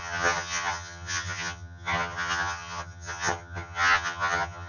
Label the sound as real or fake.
fake